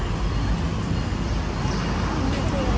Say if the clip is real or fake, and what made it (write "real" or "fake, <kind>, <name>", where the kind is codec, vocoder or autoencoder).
real